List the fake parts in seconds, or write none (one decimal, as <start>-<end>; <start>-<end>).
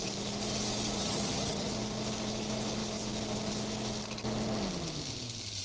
1.0-1.7